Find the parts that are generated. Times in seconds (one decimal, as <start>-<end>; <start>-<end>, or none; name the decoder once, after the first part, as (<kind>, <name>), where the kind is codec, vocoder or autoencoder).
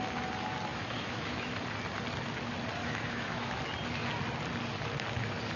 0.7-1.5 (autoencoder, DAC-VAE); 2.8-3.6